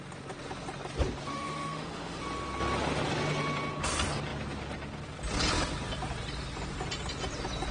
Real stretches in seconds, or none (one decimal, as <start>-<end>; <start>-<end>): 0.0-1.3; 2.2-7.7